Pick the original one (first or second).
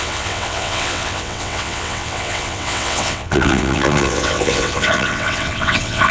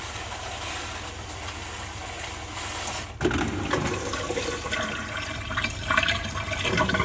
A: second